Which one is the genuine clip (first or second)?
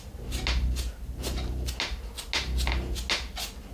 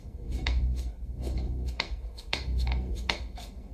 first